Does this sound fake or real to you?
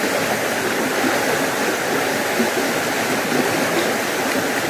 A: real